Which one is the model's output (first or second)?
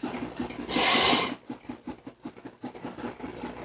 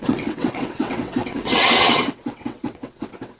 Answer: second